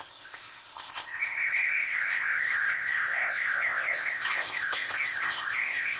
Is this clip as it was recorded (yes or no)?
no